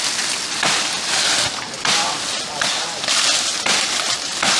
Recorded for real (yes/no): yes